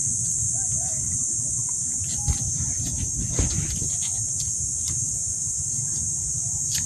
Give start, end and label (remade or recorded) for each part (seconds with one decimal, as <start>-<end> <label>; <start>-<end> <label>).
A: 0.0-6.9 recorded